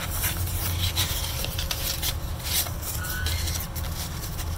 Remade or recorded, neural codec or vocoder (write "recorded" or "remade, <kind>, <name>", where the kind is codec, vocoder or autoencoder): recorded